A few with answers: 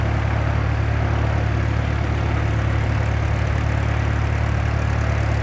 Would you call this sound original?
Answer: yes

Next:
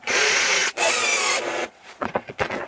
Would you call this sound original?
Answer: no